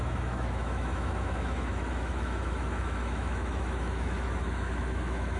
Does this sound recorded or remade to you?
remade